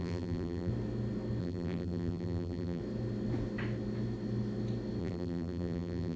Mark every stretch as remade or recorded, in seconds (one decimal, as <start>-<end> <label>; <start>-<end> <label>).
0.0-0.7 remade; 0.7-1.4 recorded; 1.4-2.8 remade; 2.8-5.0 recorded; 5.0-6.2 remade